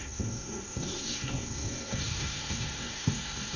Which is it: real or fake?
fake